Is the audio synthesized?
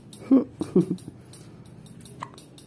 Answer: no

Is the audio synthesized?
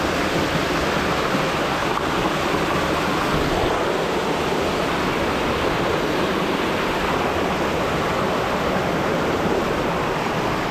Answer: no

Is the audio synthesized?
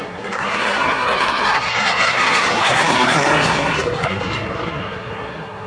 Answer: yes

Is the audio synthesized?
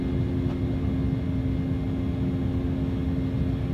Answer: no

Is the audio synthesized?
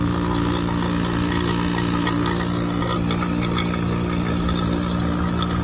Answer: no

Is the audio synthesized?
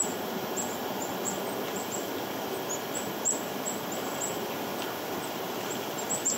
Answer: no